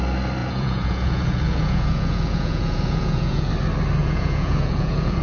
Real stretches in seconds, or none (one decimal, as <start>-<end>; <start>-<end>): 0.0-0.4; 3.5-4.0